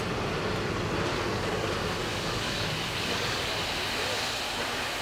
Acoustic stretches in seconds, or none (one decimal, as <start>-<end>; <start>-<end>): 0.0-1.1; 1.7-2.1; 3.5-5.0